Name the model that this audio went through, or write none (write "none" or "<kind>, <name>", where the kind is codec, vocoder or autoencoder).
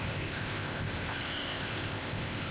codec, ZipCodec